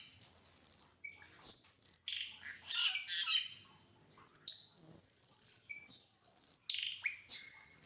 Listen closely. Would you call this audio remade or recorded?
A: recorded